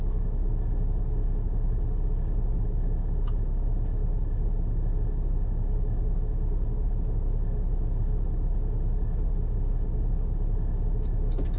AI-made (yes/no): no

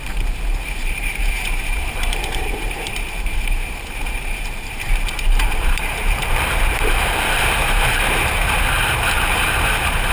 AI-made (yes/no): yes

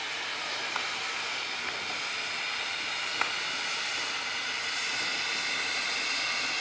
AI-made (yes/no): no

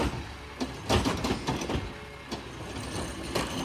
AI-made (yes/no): no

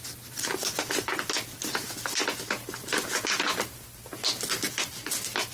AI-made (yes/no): no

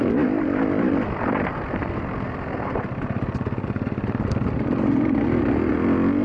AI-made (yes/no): no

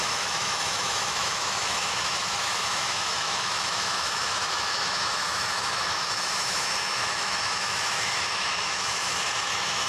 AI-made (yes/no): yes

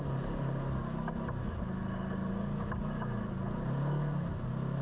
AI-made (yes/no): no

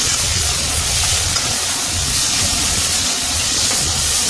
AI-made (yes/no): yes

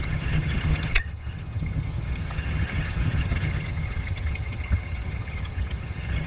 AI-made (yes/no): yes